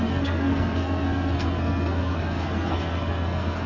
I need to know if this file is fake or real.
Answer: fake